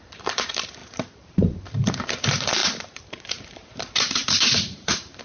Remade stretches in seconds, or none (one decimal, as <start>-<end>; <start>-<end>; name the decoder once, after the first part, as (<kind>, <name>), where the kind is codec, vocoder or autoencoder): 0.0-5.2 (vocoder, BigVGAN v2)